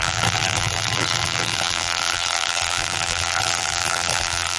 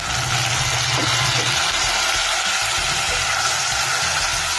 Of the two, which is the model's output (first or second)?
first